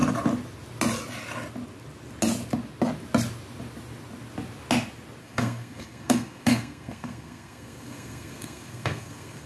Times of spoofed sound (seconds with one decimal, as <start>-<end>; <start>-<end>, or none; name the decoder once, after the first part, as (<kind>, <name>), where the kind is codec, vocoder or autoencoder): 5.2-9.5 (codec, SNAC)